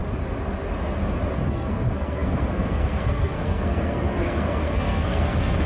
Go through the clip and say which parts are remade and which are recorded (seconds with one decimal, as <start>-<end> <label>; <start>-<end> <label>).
0.0-1.5 recorded; 1.5-5.7 remade

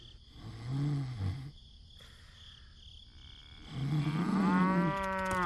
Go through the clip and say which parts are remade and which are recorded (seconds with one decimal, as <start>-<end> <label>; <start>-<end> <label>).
0.0-5.5 recorded

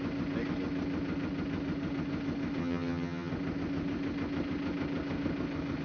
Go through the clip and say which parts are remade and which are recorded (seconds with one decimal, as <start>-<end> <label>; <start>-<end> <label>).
0.0-2.6 recorded; 2.6-3.3 remade; 3.3-5.8 recorded

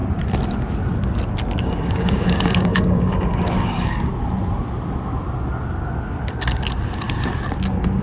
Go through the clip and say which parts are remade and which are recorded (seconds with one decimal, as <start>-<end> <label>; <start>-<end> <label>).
0.0-1.6 recorded; 1.6-4.1 remade; 4.1-8.0 recorded

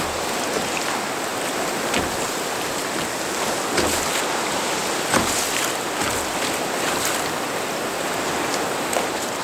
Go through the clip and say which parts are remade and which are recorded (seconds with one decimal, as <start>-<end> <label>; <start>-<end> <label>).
0.0-1.3 recorded; 1.3-3.1 remade; 3.1-9.4 recorded

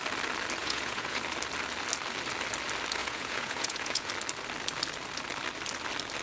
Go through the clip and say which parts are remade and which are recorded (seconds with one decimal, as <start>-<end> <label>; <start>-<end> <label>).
0.0-0.6 recorded; 0.6-1.2 remade; 1.2-3.0 recorded; 3.0-4.1 remade; 4.1-6.2 recorded

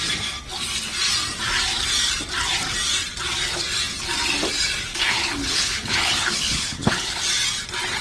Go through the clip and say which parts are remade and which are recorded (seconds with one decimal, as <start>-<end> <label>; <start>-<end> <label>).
0.0-4.9 recorded; 4.9-7.2 remade; 7.2-8.0 recorded

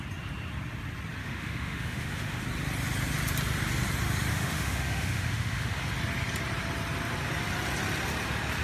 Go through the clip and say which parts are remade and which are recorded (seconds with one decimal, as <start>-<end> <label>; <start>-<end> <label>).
0.0-1.2 recorded; 1.2-2.4 remade; 2.4-4.3 recorded; 4.3-5.8 remade; 5.8-8.6 recorded